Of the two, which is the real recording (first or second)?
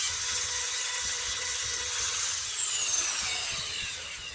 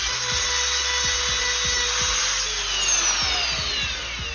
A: second